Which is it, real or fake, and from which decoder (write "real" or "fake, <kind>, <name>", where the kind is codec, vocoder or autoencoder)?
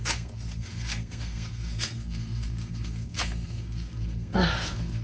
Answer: fake, codec, SNAC